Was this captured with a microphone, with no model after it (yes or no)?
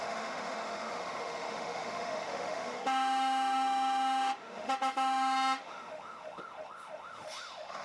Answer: no